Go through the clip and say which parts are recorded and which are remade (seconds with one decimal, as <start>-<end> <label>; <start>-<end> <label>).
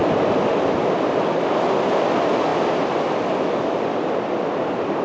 0.0-2.5 recorded; 2.5-4.3 remade; 4.3-5.0 recorded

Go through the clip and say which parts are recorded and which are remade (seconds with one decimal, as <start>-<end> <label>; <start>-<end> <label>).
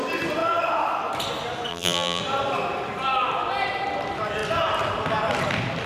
0.0-1.7 recorded; 1.7-2.2 remade; 2.2-5.9 recorded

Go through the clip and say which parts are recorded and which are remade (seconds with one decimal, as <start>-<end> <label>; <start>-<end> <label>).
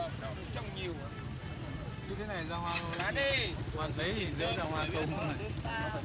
0.0-6.0 recorded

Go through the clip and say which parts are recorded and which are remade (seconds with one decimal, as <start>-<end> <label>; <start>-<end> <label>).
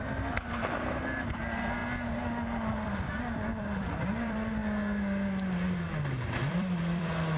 0.0-1.8 remade; 1.8-2.7 recorded; 2.7-4.6 remade; 4.6-6.5 recorded; 6.5-7.4 remade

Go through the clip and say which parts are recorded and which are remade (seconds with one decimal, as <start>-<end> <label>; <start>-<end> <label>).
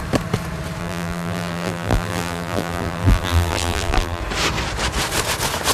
0.0-0.8 recorded; 0.8-4.2 remade; 4.2-5.7 recorded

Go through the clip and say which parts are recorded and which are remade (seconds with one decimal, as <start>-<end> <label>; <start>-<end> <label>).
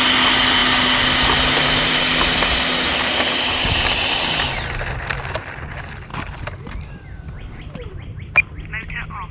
0.0-6.1 recorded; 6.1-8.3 remade; 8.3-9.3 recorded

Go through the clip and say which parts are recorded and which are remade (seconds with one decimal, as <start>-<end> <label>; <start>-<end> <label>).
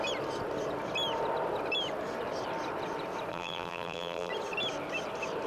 0.0-3.3 recorded; 3.3-4.3 remade; 4.3-5.5 recorded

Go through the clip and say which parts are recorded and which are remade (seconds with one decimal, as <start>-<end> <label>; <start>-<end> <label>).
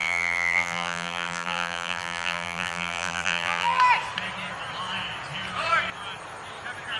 0.0-3.8 remade; 3.8-7.0 recorded